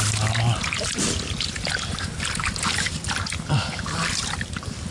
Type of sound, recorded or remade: recorded